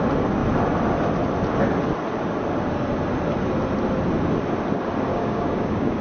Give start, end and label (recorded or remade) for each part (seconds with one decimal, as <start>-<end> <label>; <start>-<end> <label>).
0.0-5.1 recorded; 5.1-6.0 remade